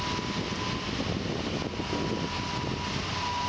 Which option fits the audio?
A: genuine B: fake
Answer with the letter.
A